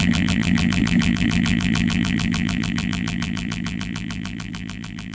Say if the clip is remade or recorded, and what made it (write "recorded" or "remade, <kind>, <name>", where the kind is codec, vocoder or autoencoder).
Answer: remade, vocoder, BigVGAN v2